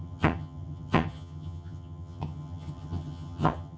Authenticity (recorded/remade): remade